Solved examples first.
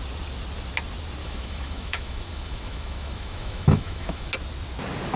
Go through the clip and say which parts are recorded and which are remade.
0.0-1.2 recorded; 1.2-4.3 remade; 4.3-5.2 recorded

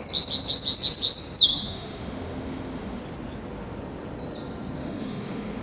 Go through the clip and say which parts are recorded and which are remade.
0.0-1.5 recorded; 1.5-3.0 remade; 3.0-4.8 recorded; 4.8-5.6 remade

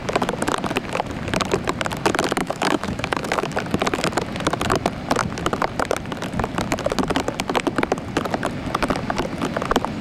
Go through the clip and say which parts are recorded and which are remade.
0.0-2.4 recorded; 2.4-3.5 remade; 3.5-10.0 recorded